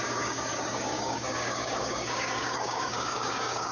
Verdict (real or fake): fake